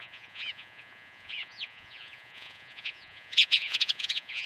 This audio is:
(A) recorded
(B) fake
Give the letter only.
B